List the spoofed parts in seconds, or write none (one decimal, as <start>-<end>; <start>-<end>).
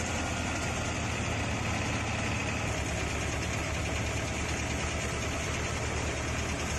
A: none